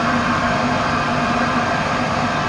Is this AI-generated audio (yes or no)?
no